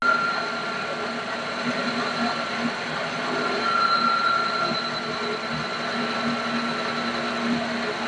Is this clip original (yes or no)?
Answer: yes